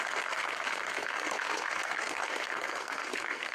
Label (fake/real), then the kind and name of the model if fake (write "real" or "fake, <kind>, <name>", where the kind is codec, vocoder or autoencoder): fake, codec, SNAC